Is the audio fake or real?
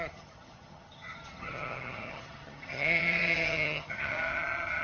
fake